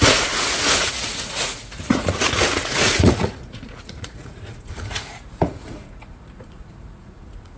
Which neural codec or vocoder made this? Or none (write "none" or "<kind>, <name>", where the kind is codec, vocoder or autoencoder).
vocoder, Vocos